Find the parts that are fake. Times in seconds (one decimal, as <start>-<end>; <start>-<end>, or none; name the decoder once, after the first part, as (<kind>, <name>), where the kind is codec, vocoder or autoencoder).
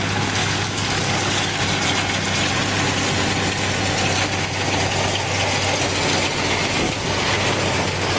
0.4-1.6 (codec, DAC)